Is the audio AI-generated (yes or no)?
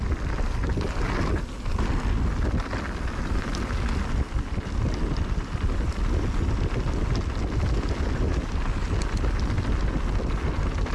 no